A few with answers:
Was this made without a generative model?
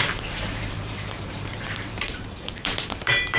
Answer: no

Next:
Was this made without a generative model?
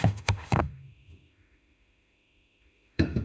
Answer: no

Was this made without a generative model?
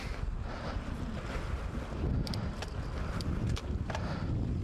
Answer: yes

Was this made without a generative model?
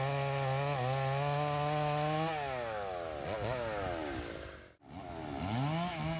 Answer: yes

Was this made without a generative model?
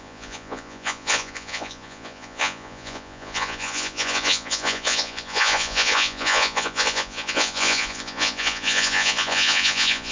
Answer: no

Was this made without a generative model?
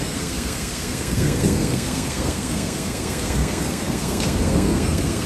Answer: no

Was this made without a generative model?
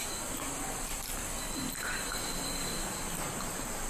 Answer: yes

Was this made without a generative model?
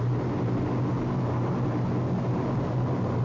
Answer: yes